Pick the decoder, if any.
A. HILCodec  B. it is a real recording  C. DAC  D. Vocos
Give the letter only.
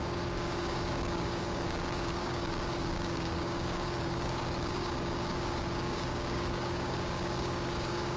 C